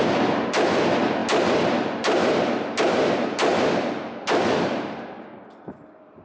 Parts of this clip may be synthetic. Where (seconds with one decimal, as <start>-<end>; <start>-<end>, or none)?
none